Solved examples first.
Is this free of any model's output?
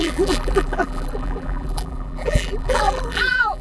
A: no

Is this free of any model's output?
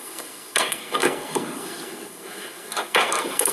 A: no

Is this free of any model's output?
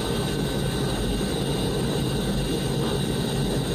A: yes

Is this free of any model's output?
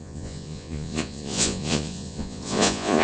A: no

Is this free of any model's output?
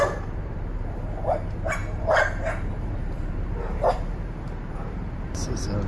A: no